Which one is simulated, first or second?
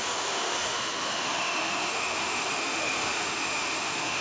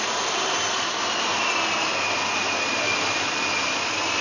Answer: first